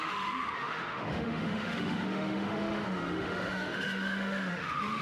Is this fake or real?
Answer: fake